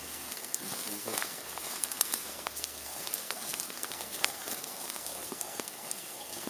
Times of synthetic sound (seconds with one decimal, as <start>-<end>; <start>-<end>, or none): 0.0-6.5